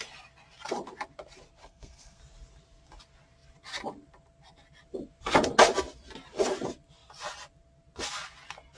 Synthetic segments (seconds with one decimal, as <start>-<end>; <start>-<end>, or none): 1.6-2.2